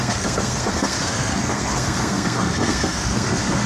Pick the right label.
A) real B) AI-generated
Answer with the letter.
B